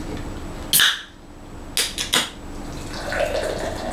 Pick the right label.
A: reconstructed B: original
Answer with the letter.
B